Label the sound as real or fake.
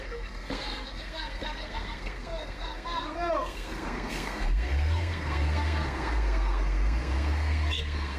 fake